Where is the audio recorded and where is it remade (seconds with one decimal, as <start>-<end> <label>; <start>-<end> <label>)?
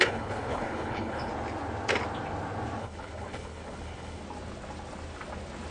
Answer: 0.0-1.3 remade; 1.3-2.8 recorded; 2.8-4.2 remade; 4.2-5.7 recorded